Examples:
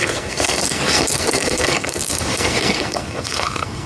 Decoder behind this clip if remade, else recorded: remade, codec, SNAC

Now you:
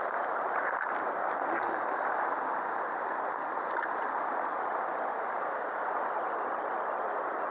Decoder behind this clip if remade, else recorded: recorded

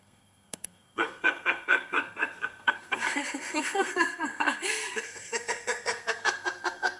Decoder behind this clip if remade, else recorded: remade, codec, SNAC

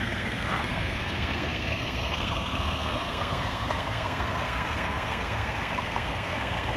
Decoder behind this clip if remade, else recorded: remade, codec, SNAC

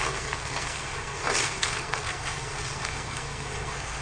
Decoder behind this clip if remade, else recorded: remade, codec, SNAC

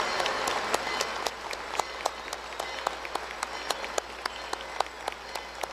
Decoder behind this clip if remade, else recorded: recorded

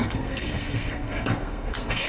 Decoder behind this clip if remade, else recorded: remade, codec, SNAC